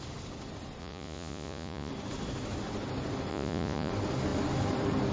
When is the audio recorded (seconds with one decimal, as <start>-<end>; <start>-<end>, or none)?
0.0-0.8; 1.9-3.3; 3.9-5.1